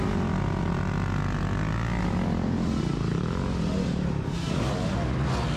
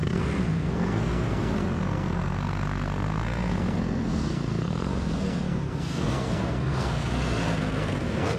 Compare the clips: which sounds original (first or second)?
first